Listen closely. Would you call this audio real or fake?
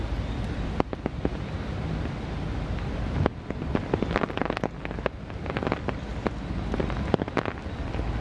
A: real